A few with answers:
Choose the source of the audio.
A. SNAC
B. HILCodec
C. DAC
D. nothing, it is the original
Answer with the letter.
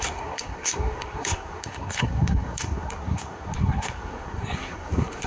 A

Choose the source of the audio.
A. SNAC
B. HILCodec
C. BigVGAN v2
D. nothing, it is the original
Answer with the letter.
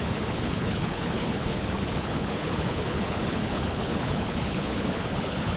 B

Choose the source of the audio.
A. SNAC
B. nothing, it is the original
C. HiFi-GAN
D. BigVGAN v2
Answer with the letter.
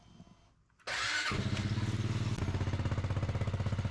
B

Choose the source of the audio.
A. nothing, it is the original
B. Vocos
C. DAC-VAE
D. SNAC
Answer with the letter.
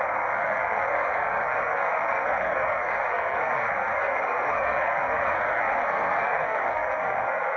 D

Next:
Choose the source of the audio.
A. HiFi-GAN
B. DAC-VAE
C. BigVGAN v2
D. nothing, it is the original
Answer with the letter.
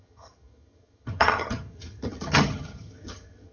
A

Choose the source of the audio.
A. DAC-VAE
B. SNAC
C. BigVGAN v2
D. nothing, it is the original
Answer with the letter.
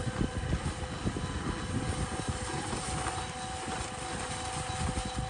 D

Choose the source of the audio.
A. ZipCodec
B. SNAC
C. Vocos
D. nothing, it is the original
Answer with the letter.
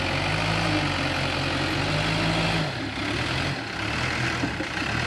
D